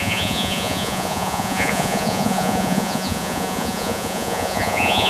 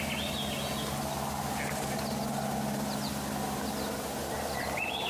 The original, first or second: second